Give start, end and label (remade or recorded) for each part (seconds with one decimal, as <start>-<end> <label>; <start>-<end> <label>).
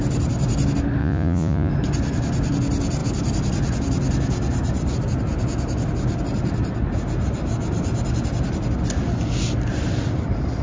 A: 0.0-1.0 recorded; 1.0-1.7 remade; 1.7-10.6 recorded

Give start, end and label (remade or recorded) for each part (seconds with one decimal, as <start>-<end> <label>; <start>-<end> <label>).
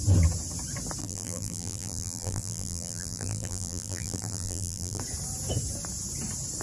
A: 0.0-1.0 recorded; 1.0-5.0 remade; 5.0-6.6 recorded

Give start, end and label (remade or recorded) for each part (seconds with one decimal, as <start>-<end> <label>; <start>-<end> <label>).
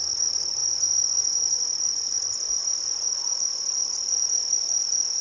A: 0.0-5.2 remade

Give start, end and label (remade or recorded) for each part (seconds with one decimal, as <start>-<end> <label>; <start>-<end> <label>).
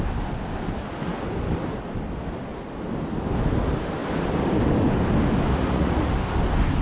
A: 0.0-5.5 recorded; 5.5-6.1 remade; 6.1-6.8 recorded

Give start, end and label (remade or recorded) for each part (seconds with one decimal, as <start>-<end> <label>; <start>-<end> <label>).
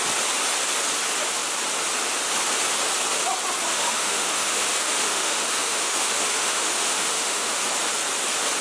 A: 0.0-3.7 recorded; 3.7-7.6 remade; 7.6-8.6 recorded